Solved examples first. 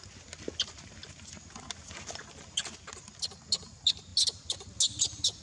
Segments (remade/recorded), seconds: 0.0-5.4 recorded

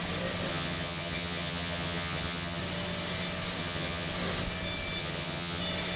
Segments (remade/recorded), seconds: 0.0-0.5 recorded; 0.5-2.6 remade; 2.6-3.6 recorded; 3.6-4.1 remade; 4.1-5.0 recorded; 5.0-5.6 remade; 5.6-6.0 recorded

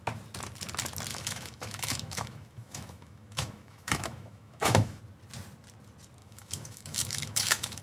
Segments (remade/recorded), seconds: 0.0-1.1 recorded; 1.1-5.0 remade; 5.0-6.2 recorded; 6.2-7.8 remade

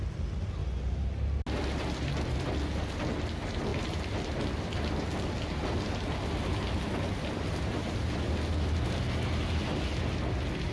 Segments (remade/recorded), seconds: 0.0-10.7 recorded